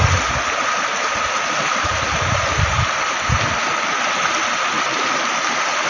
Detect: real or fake real